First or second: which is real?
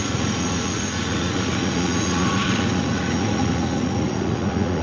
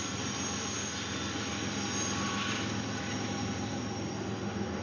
second